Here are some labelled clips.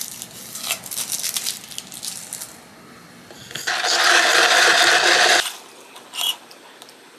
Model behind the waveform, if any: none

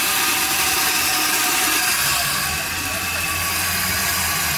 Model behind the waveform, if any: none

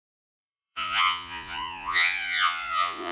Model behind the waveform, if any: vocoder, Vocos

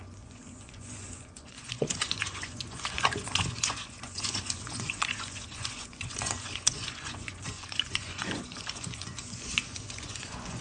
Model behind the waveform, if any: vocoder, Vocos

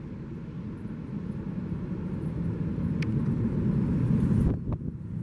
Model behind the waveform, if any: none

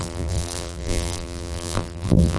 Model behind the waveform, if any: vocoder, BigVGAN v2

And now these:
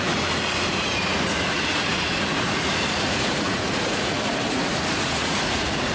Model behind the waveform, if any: vocoder, Vocos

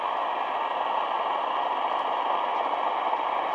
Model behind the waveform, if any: none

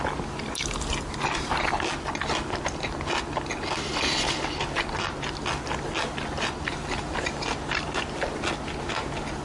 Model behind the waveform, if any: none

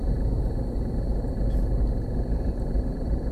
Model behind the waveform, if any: vocoder, BigVGAN v2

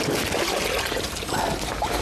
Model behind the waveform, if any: none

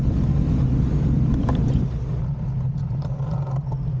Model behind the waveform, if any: none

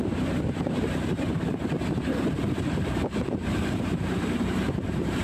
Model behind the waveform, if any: vocoder, BigVGAN v2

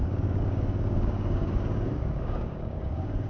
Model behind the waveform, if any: codec, DAC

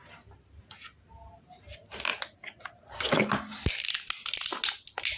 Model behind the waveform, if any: none